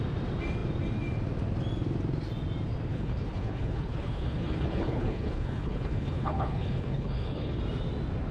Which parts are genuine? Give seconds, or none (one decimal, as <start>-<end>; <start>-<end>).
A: 0.0-2.9; 7.6-8.3